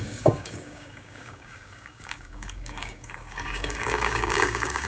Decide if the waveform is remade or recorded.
remade